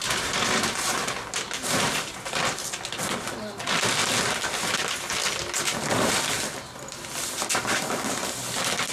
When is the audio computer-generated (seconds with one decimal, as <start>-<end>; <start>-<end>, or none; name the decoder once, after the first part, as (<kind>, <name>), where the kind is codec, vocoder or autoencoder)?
none

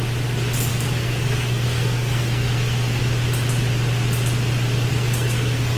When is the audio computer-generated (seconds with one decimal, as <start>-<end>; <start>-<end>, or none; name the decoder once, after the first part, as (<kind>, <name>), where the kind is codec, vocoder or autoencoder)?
0.7-3.0 (codec, SNAC); 4.9-5.8